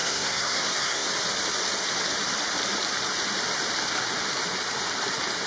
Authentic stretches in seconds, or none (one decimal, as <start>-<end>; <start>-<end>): 1.1-5.5